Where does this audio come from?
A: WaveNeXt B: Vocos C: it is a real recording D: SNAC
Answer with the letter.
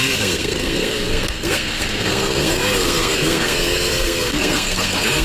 D